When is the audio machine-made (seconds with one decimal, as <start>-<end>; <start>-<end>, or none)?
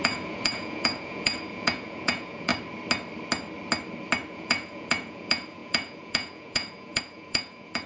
0.0-2.5; 4.3-7.9